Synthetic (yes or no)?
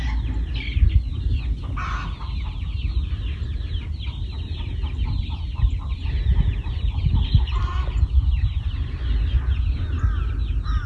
no